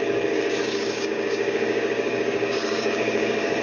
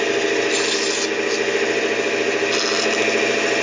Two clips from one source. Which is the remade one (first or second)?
first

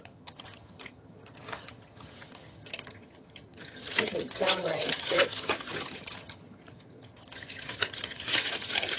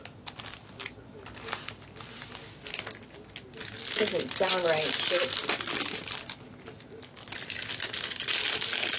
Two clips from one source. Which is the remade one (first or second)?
first